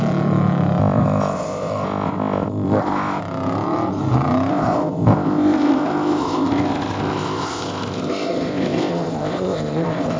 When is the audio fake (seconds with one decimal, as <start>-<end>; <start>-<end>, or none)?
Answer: 0.8-3.2; 4.5-10.2